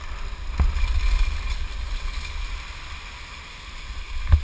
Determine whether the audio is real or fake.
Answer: real